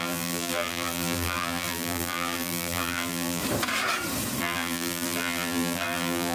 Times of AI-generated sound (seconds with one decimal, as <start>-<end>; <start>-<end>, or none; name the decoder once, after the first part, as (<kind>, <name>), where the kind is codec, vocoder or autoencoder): 0.0-3.4 (vocoder, BigVGAN v2); 4.4-6.3